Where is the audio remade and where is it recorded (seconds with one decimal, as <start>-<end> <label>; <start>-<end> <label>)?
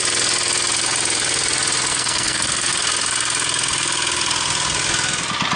0.0-1.9 recorded; 1.9-2.7 remade; 2.7-5.6 recorded